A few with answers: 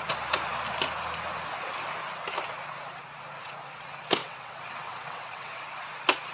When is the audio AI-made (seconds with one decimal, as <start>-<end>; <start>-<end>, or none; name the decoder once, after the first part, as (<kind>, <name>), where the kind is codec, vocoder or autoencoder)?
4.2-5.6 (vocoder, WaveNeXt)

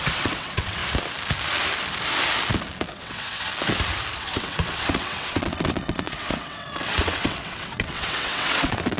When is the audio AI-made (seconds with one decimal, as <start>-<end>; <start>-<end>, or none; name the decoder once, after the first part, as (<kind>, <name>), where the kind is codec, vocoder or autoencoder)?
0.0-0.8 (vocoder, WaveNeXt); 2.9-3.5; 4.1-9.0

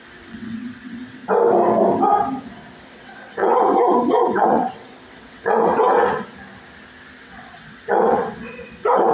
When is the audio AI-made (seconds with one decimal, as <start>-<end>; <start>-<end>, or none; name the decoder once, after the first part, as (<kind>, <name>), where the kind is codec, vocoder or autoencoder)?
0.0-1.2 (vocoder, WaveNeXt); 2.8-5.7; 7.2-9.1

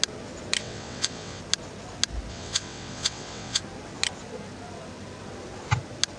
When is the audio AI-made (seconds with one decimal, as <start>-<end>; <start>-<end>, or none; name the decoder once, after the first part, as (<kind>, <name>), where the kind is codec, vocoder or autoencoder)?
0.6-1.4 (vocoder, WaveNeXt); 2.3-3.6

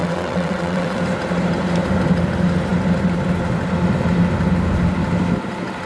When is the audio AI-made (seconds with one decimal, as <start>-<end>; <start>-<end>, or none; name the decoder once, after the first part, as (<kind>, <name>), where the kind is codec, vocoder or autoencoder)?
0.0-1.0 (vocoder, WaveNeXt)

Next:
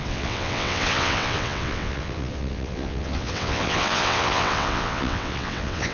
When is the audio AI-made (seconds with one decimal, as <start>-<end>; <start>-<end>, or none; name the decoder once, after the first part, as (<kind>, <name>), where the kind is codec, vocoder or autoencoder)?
0.0-5.9 (vocoder, WaveNeXt)

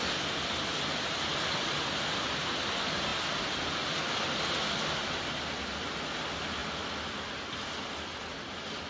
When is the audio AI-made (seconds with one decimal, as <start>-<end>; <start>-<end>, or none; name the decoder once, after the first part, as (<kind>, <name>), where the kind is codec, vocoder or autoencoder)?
none

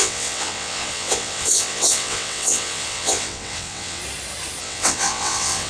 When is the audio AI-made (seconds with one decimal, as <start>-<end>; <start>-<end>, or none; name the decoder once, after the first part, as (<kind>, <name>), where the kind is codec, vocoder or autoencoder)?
0.0-4.0 (vocoder, WaveNeXt); 4.6-5.7